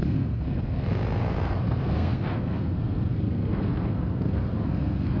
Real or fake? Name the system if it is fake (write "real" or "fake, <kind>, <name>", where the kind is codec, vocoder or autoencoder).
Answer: fake, codec, SNAC